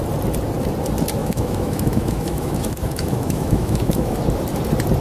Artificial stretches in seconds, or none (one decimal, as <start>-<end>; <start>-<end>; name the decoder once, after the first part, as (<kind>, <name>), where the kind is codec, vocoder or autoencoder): 1.2-4.2 (autoencoder, DAC-VAE)